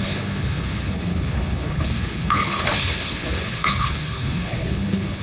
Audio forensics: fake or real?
fake